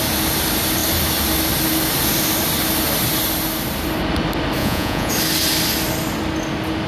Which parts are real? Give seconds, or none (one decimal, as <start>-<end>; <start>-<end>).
0.0-4.6; 5.1-6.9